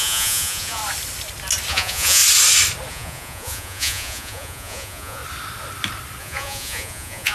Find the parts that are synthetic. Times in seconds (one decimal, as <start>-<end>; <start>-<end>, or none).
0.0-0.8; 1.7-2.2; 2.9-5.2; 6.2-7.3